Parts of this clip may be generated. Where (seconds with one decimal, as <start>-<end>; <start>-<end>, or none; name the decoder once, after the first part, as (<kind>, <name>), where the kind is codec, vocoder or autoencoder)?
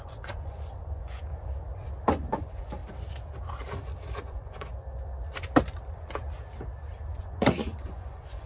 0.0-1.3 (vocoder, Vocos); 2.1-2.8; 4.2-4.7; 7.2-8.5